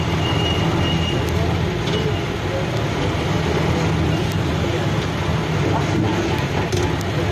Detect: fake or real real